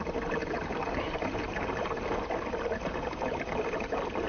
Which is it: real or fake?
real